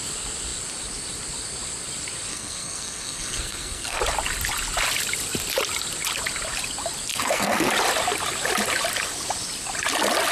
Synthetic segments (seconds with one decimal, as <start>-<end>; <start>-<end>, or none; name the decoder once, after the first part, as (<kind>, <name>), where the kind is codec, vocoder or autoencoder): 2.3-4.0 (codec, SNAC); 7.1-7.7